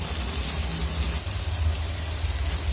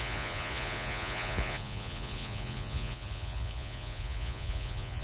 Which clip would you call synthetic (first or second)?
second